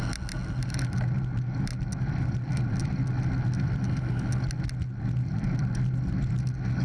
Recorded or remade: recorded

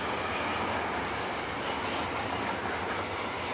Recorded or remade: recorded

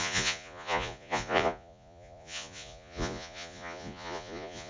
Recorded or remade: remade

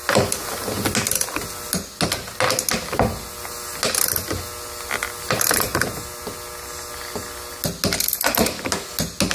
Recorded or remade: recorded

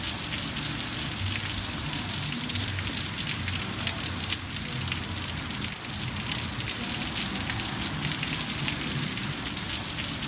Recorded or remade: recorded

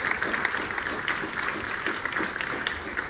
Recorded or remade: recorded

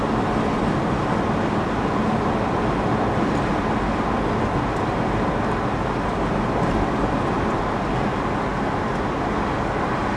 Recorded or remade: recorded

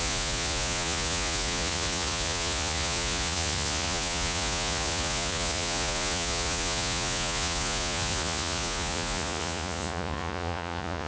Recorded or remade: remade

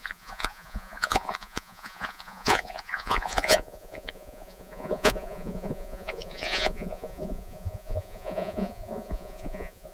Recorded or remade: remade